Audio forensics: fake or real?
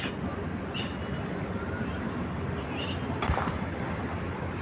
real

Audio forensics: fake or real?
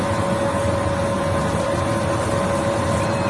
real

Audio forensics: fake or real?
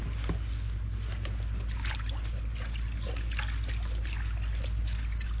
real